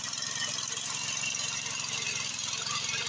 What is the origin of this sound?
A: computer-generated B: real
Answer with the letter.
B